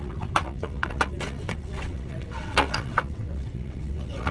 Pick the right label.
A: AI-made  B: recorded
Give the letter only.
A